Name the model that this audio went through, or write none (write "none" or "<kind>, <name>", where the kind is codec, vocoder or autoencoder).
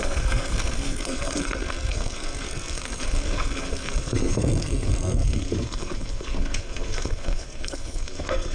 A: codec, SNAC